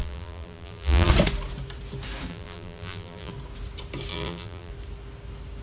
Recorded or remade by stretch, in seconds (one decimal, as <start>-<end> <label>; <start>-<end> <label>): 0.0-1.1 remade; 1.1-2.3 recorded; 2.3-3.3 remade; 3.3-4.1 recorded; 4.1-4.7 remade; 4.7-5.6 recorded